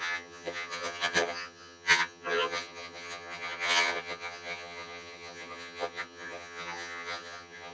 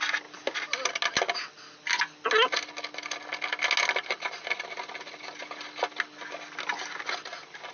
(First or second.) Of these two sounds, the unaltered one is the second